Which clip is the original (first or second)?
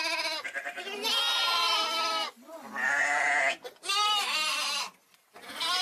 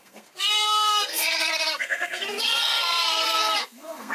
first